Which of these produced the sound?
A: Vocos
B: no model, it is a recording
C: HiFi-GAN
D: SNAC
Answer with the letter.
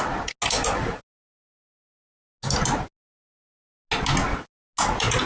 B